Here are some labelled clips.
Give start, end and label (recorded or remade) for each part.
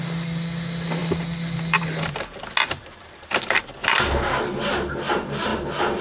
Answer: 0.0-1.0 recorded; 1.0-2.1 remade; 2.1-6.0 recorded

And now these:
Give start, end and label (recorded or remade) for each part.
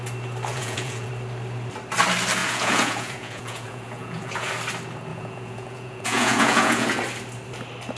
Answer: 0.0-0.5 recorded; 0.5-1.1 remade; 1.1-2.4 recorded; 2.4-4.5 remade; 4.5-5.1 recorded; 5.1-7.0 remade; 7.0-8.0 recorded